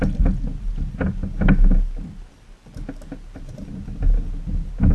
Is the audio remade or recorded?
recorded